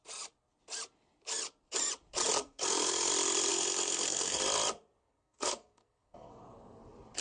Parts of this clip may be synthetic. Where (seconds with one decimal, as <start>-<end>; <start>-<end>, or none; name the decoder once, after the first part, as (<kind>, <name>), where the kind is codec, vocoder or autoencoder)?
2.4-3.1 (codec, SNAC); 3.5-4.4; 5.0-6.4